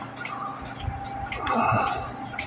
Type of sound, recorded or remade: recorded